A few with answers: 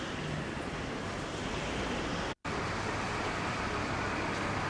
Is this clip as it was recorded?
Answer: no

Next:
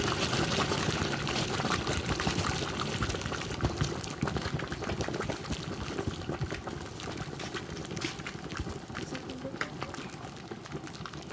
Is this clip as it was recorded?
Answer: yes